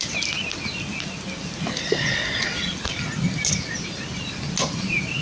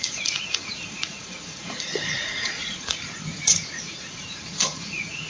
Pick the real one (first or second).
first